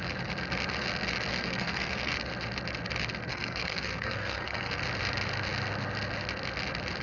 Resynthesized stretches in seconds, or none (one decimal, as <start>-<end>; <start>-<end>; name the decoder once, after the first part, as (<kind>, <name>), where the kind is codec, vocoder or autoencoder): 1.3-2.1 (codec, SNAC); 3.3-4.8

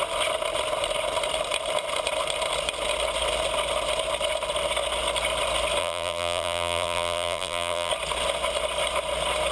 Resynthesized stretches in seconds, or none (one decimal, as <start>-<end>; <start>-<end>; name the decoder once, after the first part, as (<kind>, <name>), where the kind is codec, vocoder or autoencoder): 5.8-7.9 (vocoder, BigVGAN v2)

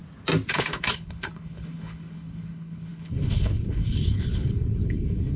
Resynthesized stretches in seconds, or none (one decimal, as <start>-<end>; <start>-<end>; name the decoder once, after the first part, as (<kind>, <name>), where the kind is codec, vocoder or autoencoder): 0.5-5.4 (codec, HILCodec)

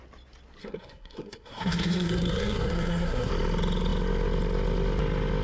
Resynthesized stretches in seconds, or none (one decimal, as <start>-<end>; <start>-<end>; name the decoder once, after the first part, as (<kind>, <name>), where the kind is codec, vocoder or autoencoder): 0.6-3.3 (codec, SNAC)

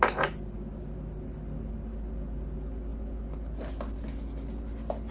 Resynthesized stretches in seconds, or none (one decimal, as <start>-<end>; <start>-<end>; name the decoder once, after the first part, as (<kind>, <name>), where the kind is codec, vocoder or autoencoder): none